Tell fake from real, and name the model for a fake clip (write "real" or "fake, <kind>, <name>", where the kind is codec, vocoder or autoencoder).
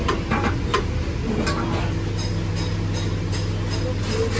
real